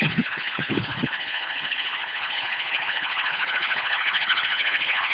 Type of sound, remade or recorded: remade